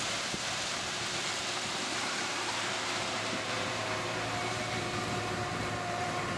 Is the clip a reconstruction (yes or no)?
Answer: yes